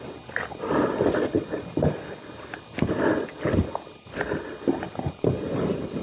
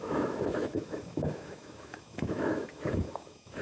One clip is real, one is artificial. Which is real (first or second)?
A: first